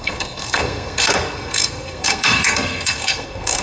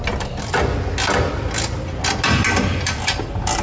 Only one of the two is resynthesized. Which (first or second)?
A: first